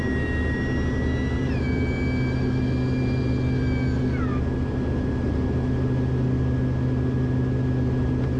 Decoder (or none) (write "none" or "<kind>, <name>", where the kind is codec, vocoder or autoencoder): none